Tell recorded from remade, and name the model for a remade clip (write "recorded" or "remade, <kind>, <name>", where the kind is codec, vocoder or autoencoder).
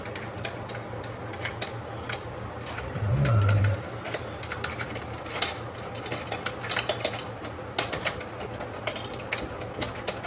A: recorded